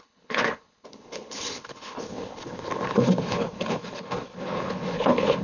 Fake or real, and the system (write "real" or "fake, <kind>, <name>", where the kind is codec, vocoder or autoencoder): fake, codec, HILCodec